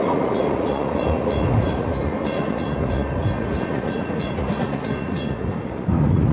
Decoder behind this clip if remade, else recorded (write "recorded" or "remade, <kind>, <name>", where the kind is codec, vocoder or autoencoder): remade, vocoder, Vocos